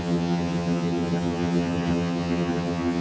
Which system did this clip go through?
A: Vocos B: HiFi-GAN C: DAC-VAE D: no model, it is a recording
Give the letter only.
B